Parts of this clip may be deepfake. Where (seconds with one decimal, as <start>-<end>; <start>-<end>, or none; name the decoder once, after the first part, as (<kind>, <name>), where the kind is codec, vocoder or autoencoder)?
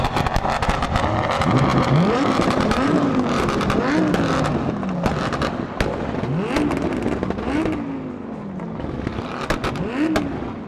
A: 1.7-3.4 (vocoder, BigVGAN v2)